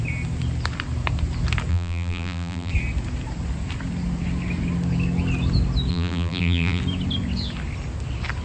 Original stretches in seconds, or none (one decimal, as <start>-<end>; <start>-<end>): 0.0-1.7; 2.7-5.9; 6.8-8.4